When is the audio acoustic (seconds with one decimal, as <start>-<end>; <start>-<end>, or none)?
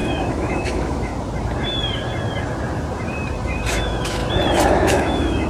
1.1-3.7; 4.2-4.7